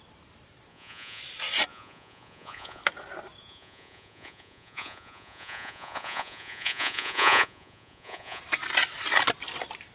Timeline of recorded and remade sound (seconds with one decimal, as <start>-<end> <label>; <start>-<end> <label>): 0.0-0.7 recorded; 0.7-1.2 remade; 1.2-1.7 recorded; 1.7-2.8 remade; 2.8-3.4 recorded; 3.4-8.4 remade; 8.4-9.9 recorded